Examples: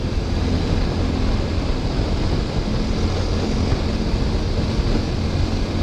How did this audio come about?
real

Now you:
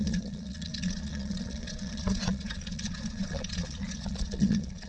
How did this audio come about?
fake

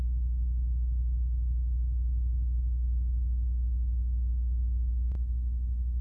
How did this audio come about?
real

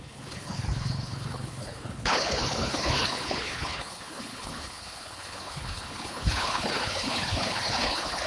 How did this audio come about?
fake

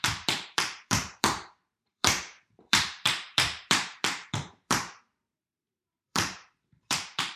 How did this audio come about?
fake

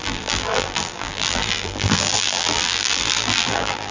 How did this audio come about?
fake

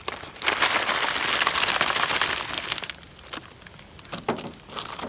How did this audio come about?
real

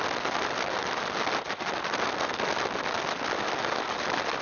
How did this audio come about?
real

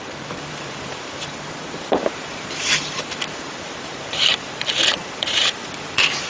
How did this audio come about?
fake